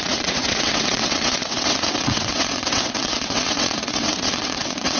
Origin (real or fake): fake